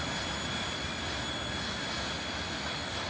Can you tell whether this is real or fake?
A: real